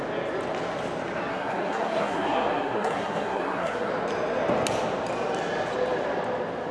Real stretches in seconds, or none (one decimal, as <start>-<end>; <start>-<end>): 0.0-1.3; 3.9-6.7